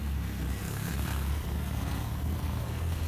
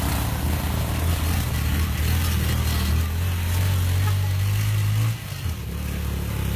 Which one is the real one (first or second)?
second